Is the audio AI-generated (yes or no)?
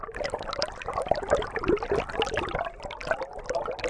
no